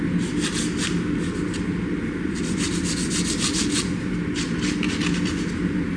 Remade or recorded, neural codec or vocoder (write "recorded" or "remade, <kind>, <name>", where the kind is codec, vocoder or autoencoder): recorded